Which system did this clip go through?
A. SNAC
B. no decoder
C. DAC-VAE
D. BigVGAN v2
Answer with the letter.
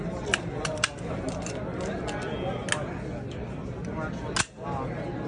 B